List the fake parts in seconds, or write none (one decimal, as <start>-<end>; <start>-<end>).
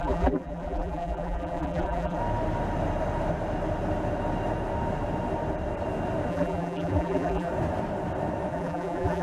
0.0-2.2; 6.3-7.5; 8.5-9.2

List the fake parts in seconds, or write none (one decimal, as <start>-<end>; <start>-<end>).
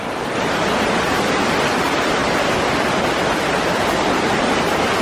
none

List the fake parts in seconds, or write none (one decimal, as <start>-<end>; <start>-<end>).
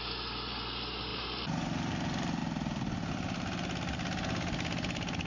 1.1-1.6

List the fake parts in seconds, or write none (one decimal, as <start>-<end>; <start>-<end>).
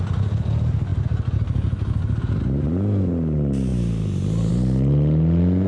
none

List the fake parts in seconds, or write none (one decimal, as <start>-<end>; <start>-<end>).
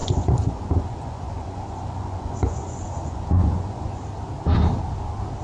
0.0-4.0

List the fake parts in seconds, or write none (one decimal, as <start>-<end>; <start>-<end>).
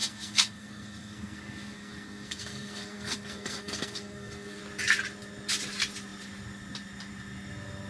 0.0-4.6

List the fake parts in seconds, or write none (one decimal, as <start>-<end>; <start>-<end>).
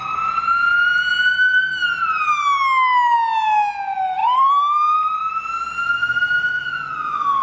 0.0-1.6; 4.2-5.3; 6.0-6.5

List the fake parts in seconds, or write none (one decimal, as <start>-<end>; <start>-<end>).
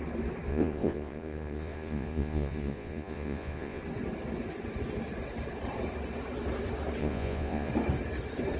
0.5-3.8; 7.0-7.7